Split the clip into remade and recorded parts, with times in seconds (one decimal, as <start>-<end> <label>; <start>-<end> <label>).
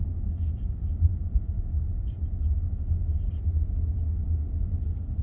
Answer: 0.0-0.8 recorded; 0.8-1.3 remade; 1.3-5.2 recorded